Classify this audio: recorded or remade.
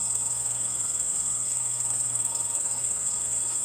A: remade